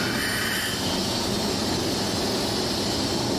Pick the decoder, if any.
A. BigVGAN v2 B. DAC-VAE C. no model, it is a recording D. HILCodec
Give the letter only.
C